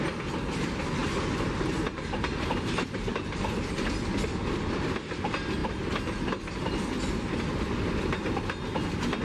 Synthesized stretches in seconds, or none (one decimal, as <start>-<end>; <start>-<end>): 1.0-3.7